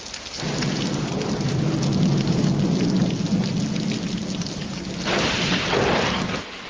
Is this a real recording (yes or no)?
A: yes